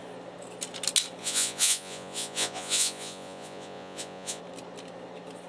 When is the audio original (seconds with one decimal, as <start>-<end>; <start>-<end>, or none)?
0.0-1.2; 4.4-5.5